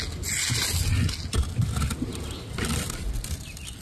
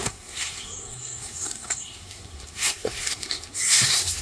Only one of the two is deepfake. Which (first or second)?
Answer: second